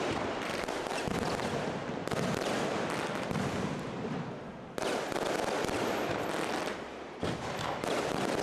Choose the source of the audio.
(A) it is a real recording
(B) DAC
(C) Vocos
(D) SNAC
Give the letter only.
A